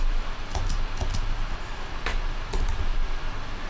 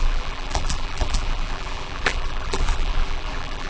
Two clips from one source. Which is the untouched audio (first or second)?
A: first